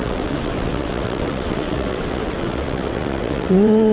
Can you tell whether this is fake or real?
fake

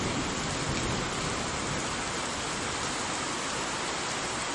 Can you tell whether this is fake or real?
real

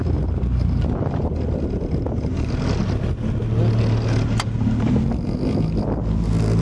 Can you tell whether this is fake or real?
real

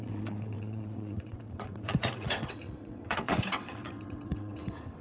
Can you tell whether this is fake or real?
fake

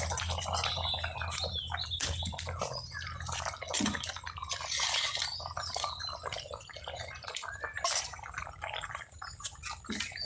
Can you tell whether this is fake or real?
real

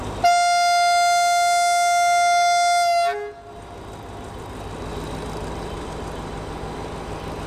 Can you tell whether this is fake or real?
real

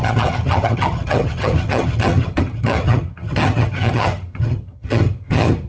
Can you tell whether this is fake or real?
fake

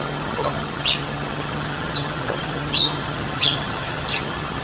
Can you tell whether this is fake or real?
fake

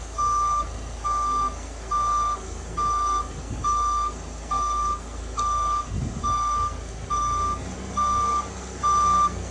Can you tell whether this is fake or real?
fake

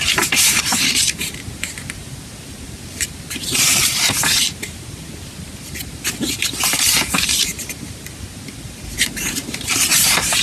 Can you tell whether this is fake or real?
fake